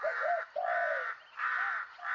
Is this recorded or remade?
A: recorded